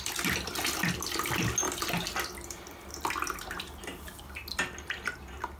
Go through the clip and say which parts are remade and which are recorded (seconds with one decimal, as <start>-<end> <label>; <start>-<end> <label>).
0.0-5.6 recorded